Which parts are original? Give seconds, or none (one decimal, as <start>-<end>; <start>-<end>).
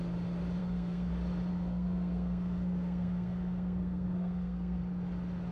0.0-0.6; 1.1-1.5; 4.8-5.5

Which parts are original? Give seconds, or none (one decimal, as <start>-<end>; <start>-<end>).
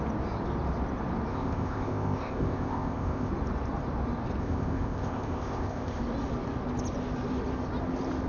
0.0-1.3; 3.3-4.4; 6.0-8.3